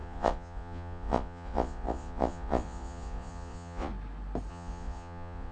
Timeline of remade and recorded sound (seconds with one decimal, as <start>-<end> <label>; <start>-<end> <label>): 0.0-3.9 remade; 3.9-4.5 recorded; 4.5-5.5 remade